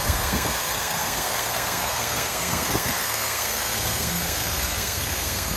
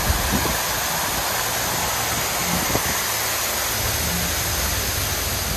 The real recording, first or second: second